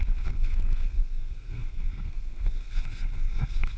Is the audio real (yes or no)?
no